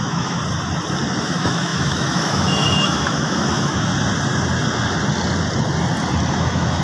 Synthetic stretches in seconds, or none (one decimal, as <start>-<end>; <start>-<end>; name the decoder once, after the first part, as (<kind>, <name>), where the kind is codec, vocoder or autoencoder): 0.0-0.4 (autoencoder, DAC-VAE); 1.2-3.9; 6.3-6.8